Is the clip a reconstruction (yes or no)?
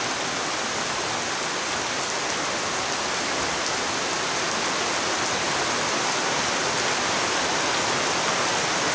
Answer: no